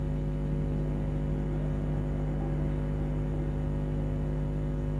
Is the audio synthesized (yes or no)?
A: no